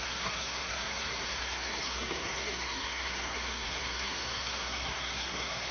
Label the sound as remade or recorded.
remade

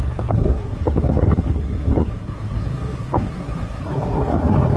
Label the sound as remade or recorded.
remade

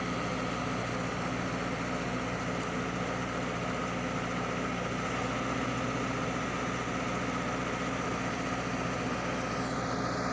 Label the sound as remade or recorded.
recorded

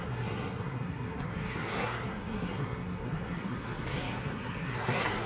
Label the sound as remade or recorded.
remade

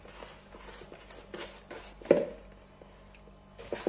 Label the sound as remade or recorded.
recorded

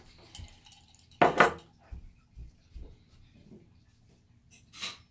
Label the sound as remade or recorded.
recorded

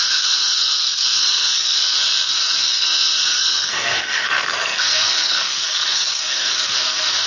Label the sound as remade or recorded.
remade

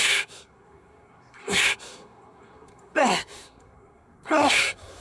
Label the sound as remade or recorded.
remade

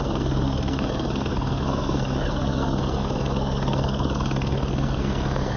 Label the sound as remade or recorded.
remade